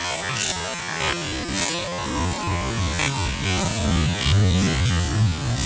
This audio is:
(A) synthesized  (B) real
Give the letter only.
B